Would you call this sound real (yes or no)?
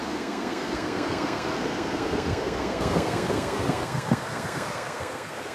no